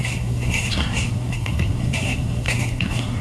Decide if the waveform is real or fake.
fake